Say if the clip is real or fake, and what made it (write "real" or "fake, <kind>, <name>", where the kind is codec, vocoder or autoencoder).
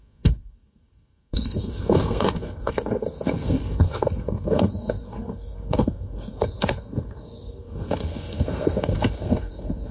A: fake, codec, SNAC